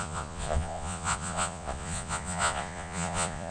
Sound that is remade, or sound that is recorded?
remade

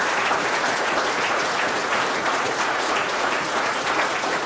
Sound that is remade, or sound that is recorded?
remade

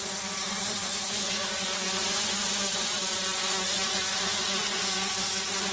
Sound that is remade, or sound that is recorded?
remade